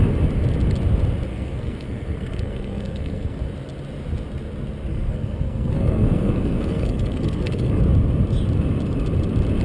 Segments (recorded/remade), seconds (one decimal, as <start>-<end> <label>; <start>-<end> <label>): 0.0-1.3 recorded; 1.3-3.4 remade; 3.4-4.9 recorded; 4.9-7.8 remade; 7.8-9.6 recorded